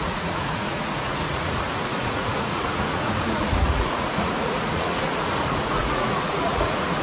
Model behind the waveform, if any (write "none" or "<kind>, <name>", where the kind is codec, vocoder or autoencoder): vocoder, Vocos